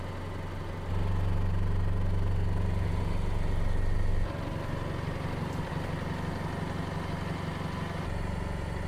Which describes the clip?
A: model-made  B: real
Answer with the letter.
B